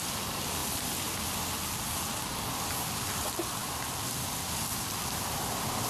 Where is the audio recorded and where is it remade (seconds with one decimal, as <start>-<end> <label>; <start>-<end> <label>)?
0.0-0.6 remade; 0.6-2.5 recorded; 2.5-5.9 remade